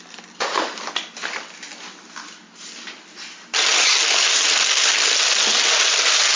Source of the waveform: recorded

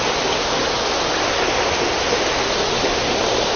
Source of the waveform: recorded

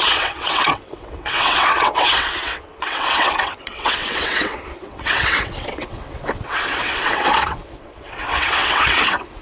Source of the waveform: remade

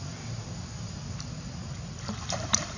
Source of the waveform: recorded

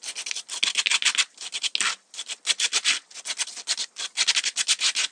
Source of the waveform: recorded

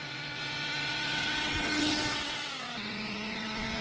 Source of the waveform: remade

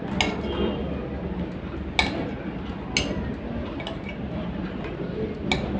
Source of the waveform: recorded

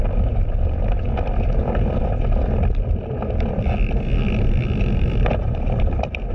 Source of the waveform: recorded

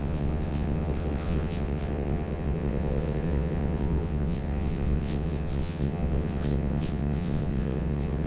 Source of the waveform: remade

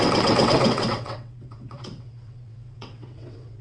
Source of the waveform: remade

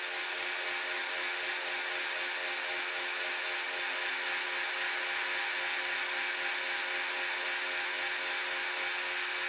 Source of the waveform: recorded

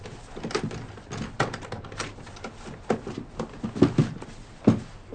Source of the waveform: recorded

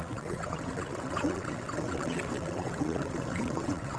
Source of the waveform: remade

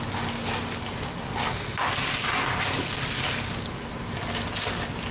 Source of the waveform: recorded